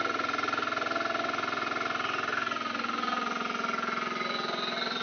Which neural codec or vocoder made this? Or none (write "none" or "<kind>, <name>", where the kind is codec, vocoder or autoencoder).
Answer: none